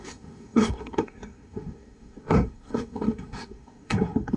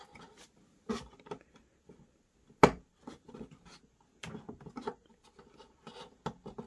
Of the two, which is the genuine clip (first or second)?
second